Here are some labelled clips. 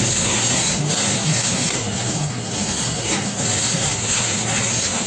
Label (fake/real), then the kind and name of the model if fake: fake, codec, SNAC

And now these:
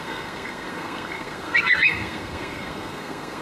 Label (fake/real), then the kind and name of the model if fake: fake, codec, SNAC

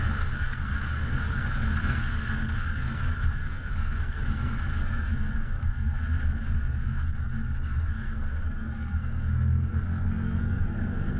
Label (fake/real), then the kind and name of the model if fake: fake, codec, SNAC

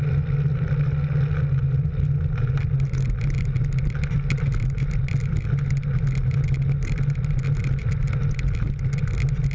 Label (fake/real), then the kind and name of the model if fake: real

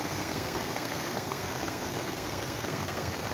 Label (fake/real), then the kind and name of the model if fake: fake, codec, SNAC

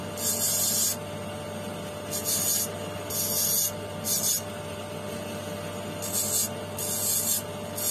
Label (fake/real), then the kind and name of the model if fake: real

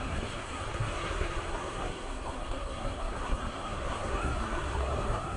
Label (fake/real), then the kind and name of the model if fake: fake, codec, SNAC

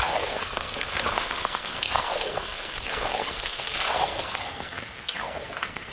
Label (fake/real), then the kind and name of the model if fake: fake, codec, SNAC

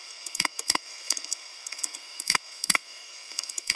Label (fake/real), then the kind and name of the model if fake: fake, codec, SNAC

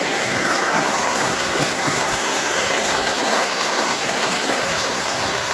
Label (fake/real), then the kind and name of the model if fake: fake, codec, SNAC